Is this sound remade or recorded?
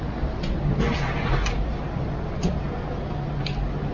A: recorded